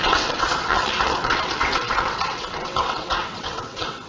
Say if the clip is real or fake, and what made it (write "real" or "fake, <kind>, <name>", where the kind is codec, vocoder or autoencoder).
fake, vocoder, WaveNeXt